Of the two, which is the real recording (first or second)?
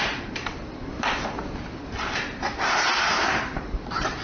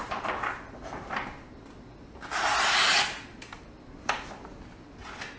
second